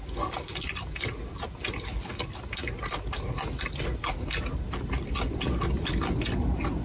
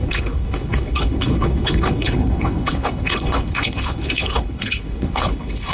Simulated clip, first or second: second